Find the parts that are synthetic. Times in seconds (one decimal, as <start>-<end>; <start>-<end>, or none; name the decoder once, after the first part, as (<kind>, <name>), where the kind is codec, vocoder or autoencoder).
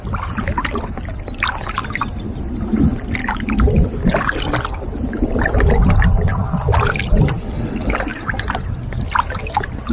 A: 8.1-8.8 (vocoder, BigVGAN v2)